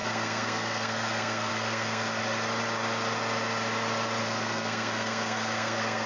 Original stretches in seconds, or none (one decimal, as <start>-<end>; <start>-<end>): 2.2-4.2